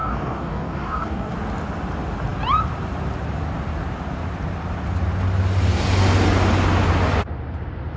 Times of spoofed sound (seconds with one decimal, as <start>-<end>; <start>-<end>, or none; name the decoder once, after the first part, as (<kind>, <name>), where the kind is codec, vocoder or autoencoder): 0.0-1.3 (codec, DAC)